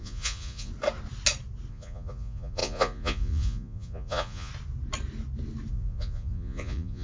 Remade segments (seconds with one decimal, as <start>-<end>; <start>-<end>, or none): 0.0-0.7; 1.7-4.5; 5.7-7.0